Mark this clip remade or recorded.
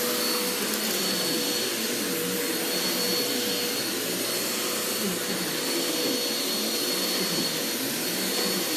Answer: recorded